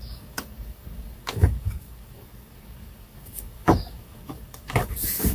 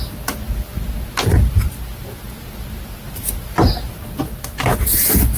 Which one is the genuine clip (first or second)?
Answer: second